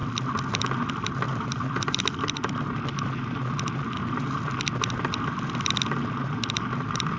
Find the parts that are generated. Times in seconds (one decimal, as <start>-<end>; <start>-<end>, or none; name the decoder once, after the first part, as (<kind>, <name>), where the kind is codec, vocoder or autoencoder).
none